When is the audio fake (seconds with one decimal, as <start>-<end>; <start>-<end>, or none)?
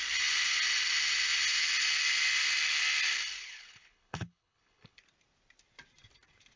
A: 3.4-5.0